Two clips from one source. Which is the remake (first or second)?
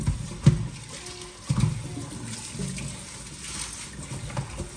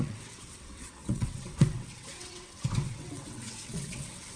second